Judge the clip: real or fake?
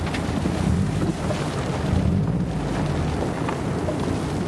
real